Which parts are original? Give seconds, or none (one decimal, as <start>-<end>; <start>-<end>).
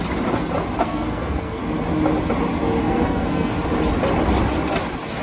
0.0-0.8; 1.6-2.8; 3.5-5.2